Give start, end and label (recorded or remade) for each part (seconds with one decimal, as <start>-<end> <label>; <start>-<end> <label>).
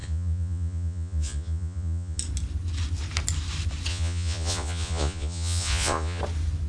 0.0-2.2 remade; 2.2-3.9 recorded; 3.9-6.2 remade; 6.2-6.7 recorded